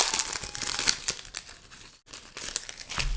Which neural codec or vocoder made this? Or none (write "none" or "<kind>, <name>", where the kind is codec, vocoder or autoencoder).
none